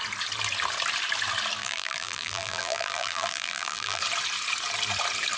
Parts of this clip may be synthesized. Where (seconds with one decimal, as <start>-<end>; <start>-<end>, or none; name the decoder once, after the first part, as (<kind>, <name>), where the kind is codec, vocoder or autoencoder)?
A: 1.6-4.0 (vocoder, BigVGAN v2)